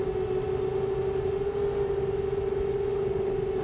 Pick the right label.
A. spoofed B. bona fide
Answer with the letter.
B